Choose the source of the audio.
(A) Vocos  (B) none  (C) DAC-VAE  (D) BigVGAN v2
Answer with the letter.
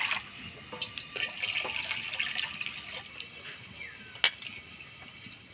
B